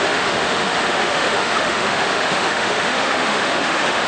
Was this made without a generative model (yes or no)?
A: no